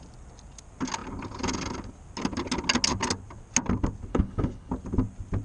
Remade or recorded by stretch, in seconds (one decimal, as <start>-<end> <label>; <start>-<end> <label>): 0.0-4.1 recorded; 4.1-4.7 remade; 4.7-5.4 recorded

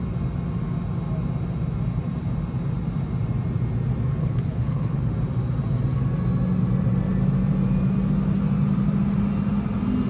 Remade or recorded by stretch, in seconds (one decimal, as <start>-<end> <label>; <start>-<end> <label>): 0.0-4.2 recorded; 4.2-5.1 remade; 5.1-10.1 recorded